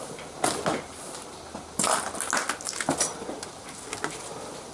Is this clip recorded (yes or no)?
yes